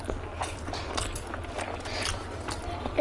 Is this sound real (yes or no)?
yes